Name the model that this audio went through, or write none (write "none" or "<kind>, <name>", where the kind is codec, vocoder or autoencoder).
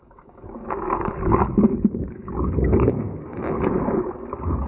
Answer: codec, DAC